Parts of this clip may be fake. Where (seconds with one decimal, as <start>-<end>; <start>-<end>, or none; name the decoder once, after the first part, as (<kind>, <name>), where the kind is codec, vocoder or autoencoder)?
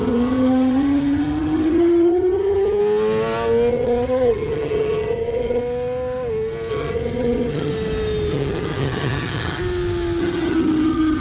0.0-2.8 (vocoder, HiFi-GAN); 3.7-5.6; 6.7-7.7; 8.3-9.6; 10.2-11.2